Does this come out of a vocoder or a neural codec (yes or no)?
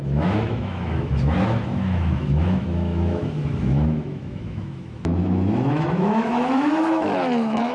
yes